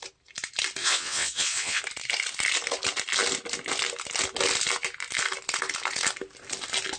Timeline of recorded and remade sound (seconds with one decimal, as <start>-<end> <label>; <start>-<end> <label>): 0.0-0.8 recorded; 0.8-1.8 remade; 1.8-7.0 recorded